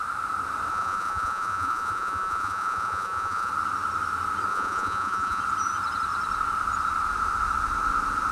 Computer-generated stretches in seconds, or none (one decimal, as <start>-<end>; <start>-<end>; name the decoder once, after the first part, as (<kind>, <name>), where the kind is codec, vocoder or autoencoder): 0.7-3.5 (vocoder, Vocos); 4.5-5.4